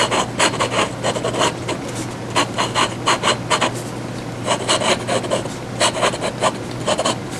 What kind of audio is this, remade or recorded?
recorded